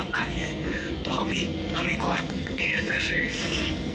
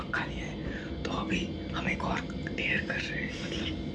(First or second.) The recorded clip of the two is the second